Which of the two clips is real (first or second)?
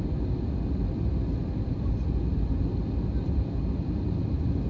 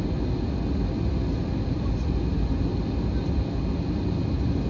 second